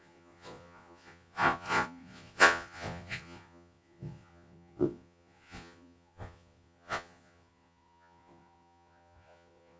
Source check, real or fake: fake